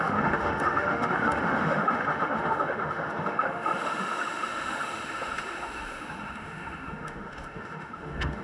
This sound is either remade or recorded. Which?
remade